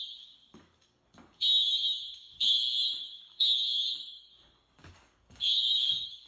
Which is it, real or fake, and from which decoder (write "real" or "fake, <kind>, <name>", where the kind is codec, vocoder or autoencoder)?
fake, codec, DAC